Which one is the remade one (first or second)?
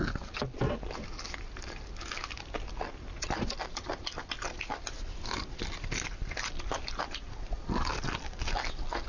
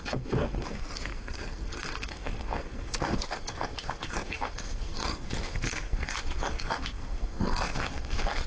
second